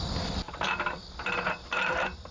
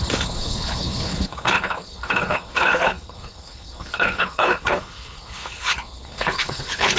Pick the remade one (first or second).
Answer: second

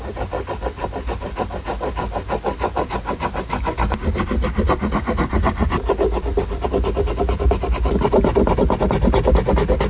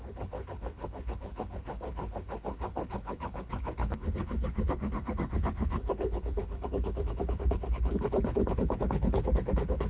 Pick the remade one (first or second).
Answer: second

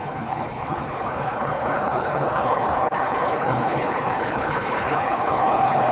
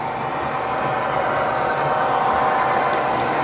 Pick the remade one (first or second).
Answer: first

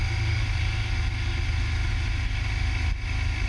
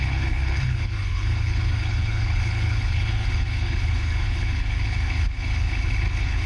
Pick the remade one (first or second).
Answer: second